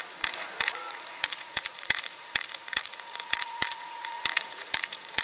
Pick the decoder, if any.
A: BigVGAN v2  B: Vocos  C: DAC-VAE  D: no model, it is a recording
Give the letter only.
B